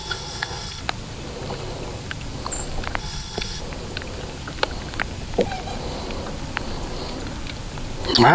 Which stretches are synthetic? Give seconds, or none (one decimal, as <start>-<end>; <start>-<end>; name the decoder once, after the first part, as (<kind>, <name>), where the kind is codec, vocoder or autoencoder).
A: 0.0-0.8 (codec, HILCodec); 3.0-3.6